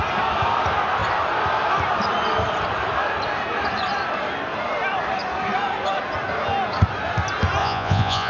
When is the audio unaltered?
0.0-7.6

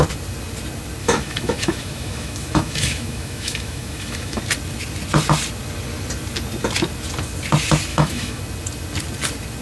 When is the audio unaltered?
0.0-1.0; 4.4-7.9; 8.4-9.6

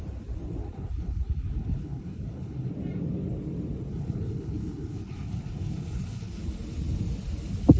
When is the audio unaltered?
0.0-0.6; 2.7-3.9; 6.4-7.8